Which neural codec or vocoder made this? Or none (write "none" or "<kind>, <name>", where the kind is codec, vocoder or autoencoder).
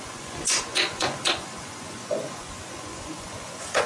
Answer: vocoder, Vocos